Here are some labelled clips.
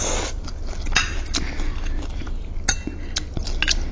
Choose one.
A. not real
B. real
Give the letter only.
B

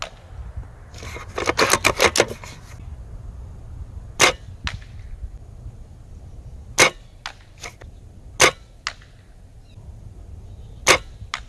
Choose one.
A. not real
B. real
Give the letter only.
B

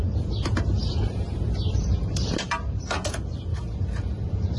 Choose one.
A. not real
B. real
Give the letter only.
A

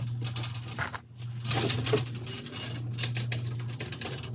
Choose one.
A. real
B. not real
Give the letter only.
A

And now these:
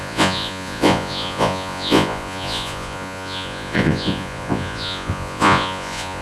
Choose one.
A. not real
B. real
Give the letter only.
A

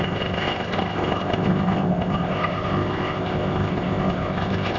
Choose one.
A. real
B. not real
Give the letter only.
B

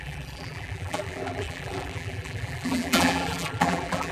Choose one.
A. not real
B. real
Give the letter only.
A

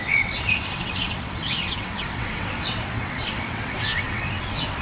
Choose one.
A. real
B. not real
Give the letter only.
B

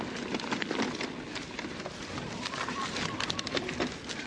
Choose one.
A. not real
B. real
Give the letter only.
B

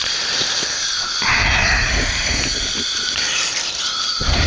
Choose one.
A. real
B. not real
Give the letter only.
A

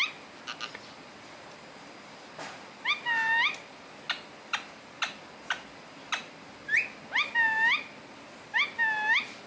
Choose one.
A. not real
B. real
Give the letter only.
B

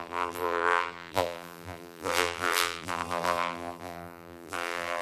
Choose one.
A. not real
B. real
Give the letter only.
A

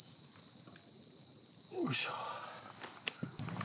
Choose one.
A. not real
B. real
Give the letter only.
B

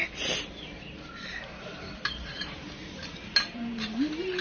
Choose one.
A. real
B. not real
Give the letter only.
B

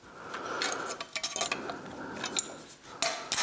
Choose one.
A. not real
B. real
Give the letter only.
B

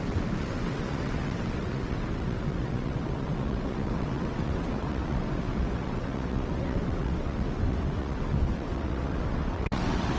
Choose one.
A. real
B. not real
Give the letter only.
B